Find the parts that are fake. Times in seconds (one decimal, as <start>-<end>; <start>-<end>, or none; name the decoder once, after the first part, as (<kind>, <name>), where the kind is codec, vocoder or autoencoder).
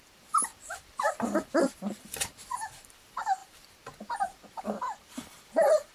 0.0-5.9 (vocoder, BigVGAN v2)